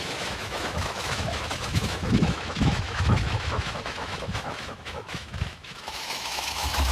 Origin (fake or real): fake